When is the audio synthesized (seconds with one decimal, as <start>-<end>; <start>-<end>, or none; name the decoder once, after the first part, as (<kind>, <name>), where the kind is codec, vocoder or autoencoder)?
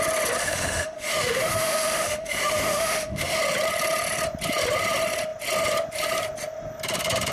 0.4-3.4 (autoencoder, DAC-VAE)